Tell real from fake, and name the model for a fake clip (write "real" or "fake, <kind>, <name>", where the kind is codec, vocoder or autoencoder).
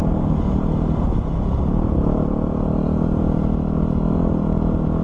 real